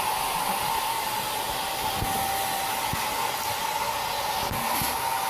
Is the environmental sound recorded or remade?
recorded